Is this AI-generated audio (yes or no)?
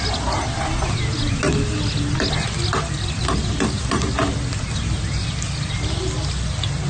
no